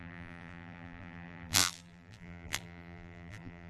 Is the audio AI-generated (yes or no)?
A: yes